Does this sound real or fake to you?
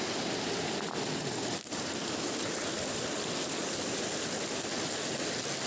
real